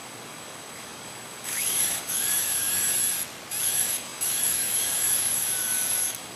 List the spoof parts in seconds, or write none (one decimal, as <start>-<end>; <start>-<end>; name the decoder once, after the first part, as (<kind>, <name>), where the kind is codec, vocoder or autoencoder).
0.0-3.0 (codec, DAC); 3.6-6.4